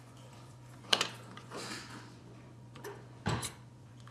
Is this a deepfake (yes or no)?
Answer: yes